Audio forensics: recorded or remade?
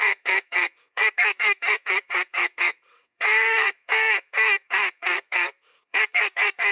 remade